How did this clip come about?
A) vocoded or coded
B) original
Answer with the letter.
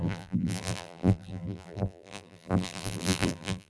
A